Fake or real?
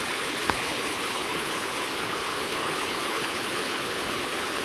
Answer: fake